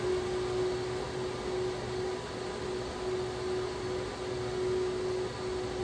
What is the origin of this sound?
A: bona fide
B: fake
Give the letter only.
A